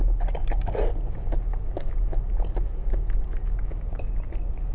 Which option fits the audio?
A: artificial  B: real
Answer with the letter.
B